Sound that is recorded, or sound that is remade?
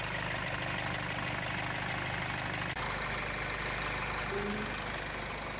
recorded